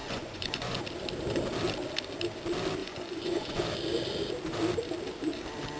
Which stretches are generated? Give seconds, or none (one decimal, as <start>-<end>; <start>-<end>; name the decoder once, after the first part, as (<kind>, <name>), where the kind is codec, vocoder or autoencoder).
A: 0.0-0.8 (vocoder, Vocos); 2.8-3.6